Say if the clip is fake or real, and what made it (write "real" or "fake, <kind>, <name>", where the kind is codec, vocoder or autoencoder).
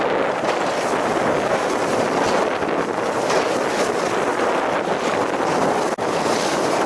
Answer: real